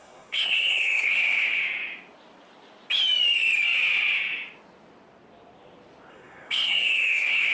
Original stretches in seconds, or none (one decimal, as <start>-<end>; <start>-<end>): 1.6-6.1